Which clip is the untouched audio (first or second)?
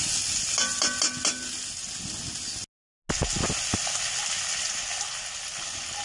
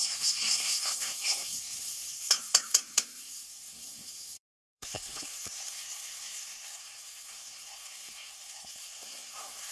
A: first